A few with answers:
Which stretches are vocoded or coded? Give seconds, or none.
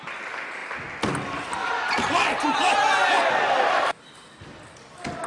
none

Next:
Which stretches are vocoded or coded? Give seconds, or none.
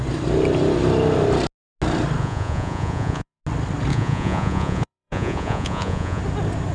2.2-3.4 (vocoder, Vocos); 3.9-6.2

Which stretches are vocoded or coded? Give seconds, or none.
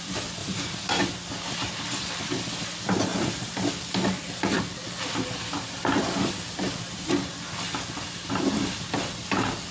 0.4-1.0 (vocoder, Vocos)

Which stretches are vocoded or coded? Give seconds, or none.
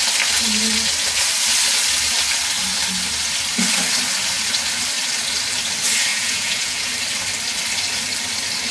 6.1-6.9 (vocoder, Vocos)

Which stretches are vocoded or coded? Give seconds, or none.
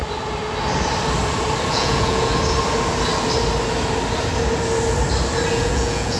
1.7-2.3 (vocoder, Vocos); 5.5-6.2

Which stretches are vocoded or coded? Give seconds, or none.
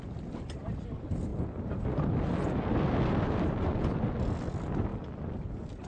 none